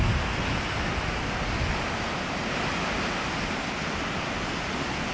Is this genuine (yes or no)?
yes